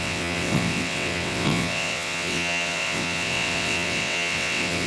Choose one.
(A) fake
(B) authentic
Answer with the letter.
A